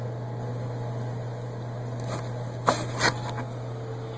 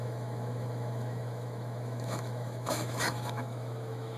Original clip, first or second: first